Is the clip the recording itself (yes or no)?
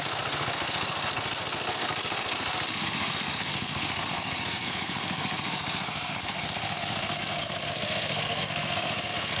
no